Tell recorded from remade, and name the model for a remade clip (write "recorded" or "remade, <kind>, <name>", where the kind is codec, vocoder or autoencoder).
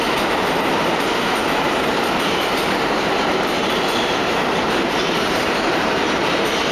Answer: remade, vocoder, BigVGAN v2